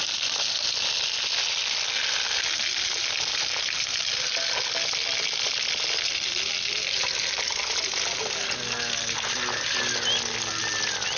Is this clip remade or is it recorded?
recorded